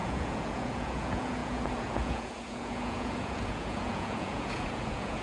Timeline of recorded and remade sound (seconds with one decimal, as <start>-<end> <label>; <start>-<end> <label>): 0.0-5.2 remade